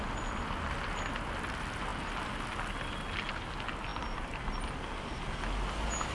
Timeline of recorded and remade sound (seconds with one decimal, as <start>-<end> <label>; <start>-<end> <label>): 0.0-6.1 recorded

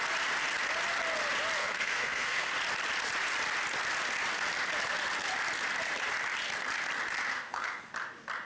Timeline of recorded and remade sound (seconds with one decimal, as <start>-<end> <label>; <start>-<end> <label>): 0.0-1.6 recorded; 1.6-2.5 remade; 2.5-7.3 recorded; 7.3-7.9 remade; 7.9-8.5 recorded

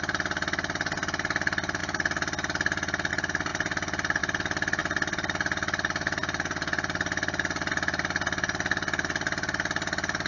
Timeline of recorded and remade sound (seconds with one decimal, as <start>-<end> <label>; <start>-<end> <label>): 0.0-3.5 recorded; 3.5-4.2 remade; 4.2-4.8 recorded; 4.8-7.7 remade; 7.7-10.3 recorded

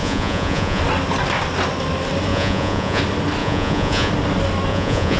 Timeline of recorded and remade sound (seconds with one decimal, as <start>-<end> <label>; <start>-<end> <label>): 0.0-0.8 remade; 0.8-2.3 recorded; 2.3-3.0 remade; 3.0-3.4 recorded; 3.4-4.1 remade; 4.1-4.7 recorded; 4.7-5.2 remade

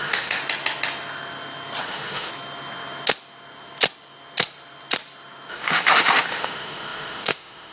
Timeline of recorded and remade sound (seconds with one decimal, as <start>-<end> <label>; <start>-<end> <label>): 0.0-0.4 remade; 0.4-1.8 recorded; 1.8-2.3 remade; 2.3-5.5 recorded; 5.5-7.7 remade

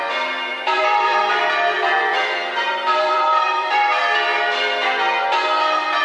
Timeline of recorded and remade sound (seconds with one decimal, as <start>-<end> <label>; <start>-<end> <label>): 0.0-0.5 recorded; 0.5-1.2 remade; 1.2-2.1 recorded; 2.1-4.0 remade; 4.0-6.0 recorded

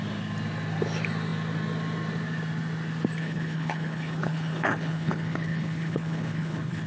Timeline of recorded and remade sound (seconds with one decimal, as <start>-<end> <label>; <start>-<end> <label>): 0.0-3.2 recorded; 3.2-6.9 remade

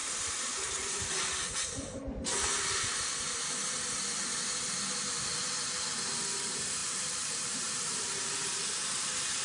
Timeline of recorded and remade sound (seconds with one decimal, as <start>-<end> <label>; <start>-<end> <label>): 0.0-1.7 remade; 1.7-6.8 recorded; 6.8-8.6 remade; 8.6-9.4 recorded